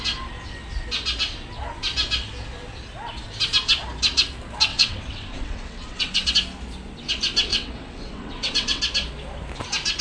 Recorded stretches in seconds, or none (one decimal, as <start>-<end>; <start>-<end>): 0.0-4.7; 6.3-7.5; 8.8-10.0